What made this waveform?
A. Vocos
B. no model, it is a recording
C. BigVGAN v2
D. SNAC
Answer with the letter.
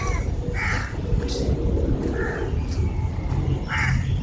B